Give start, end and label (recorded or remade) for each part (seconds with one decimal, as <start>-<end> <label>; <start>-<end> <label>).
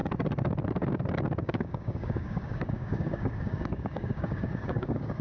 0.0-1.4 recorded; 1.4-5.2 remade